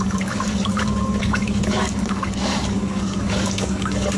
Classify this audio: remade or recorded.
remade